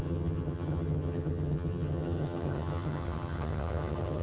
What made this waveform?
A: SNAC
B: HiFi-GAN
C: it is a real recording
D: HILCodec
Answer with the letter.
B